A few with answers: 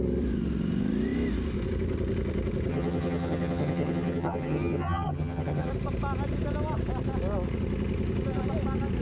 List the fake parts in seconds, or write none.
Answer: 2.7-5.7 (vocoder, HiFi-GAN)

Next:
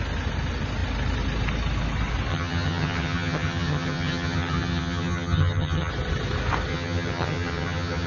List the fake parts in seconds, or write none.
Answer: 2.3-5.9 (vocoder, HiFi-GAN); 6.7-8.1

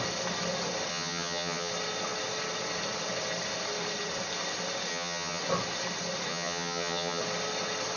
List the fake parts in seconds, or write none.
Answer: 0.9-1.7 (vocoder, HiFi-GAN); 4.9-5.4; 6.3-7.2

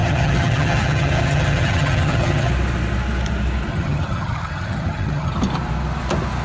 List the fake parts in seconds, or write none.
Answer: 0.0-2.5 (vocoder, HiFi-GAN); 3.7-5.4

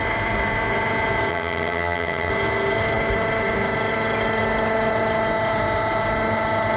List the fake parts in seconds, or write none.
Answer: 1.3-2.3 (vocoder, HiFi-GAN)